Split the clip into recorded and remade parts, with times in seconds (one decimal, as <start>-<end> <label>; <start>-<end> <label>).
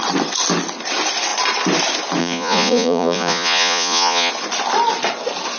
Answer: 0.0-2.2 recorded; 2.2-4.3 remade; 4.3-5.6 recorded